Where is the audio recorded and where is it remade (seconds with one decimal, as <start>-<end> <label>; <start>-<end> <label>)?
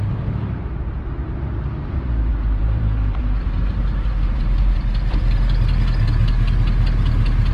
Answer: 0.0-2.3 recorded; 2.3-5.3 remade; 5.3-7.5 recorded